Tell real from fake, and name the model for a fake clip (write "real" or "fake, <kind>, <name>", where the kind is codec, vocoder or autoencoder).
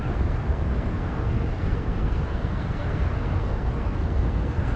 fake, codec, SNAC